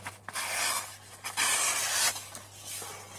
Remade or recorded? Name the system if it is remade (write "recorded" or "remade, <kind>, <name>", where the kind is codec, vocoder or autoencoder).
recorded